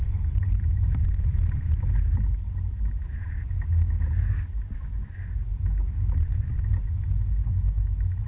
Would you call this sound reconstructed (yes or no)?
no